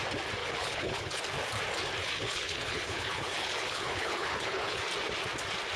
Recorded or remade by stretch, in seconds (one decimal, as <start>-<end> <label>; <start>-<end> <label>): 0.0-0.4 recorded; 0.4-1.2 remade; 1.2-2.0 recorded; 2.0-4.8 remade; 4.8-5.8 recorded